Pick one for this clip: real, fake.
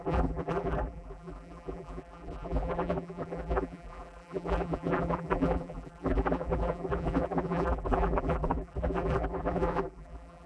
fake